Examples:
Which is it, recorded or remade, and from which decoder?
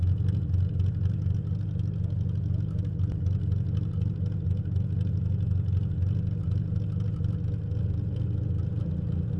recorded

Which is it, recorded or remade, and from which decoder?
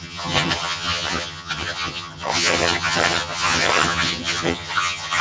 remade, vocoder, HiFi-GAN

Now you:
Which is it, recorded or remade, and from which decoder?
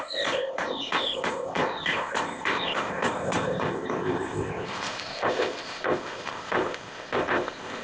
remade, codec, ZipCodec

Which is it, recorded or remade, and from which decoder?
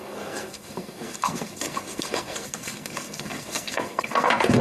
remade, codec, SNAC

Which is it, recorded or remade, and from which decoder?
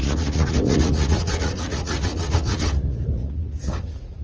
remade, vocoder, Vocos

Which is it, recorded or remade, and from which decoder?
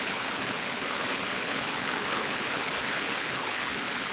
remade, codec, HILCodec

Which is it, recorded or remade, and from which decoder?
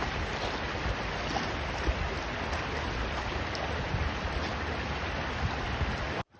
recorded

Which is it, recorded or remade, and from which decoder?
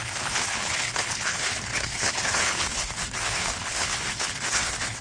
remade, codec, HILCodec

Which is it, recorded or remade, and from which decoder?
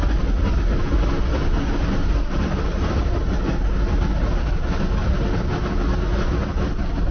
recorded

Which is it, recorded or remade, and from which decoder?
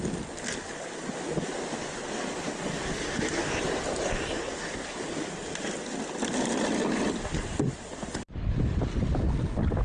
recorded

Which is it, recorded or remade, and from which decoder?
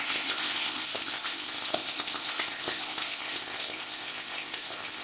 remade, codec, ZipCodec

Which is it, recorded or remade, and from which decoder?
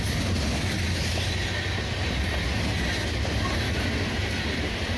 recorded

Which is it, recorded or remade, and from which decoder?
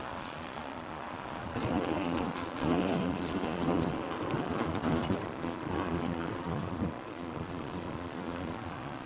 remade, vocoder, Vocos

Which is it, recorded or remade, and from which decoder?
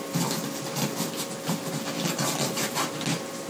recorded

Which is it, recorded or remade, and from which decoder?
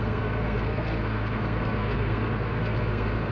remade, codec, SNAC